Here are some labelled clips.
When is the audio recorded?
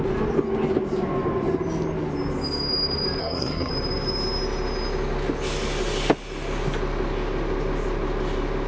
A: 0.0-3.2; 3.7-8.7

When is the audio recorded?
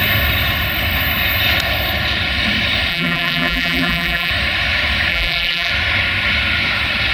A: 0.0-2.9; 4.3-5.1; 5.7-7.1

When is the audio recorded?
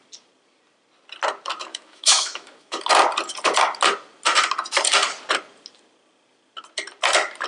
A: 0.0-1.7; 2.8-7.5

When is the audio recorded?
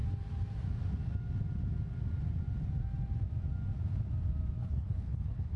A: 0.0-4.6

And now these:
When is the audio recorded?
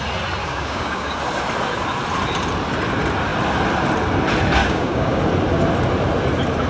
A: 0.0-0.4; 1.2-4.6; 5.2-6.7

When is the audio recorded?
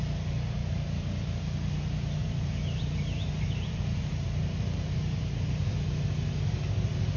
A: 0.0-0.6; 1.3-2.2; 5.7-7.2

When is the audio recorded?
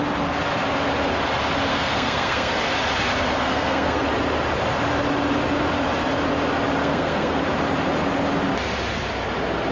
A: 0.0-1.7; 2.5-3.4; 4.0-6.8; 7.4-9.7